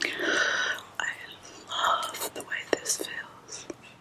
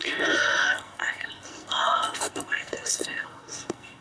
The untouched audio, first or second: first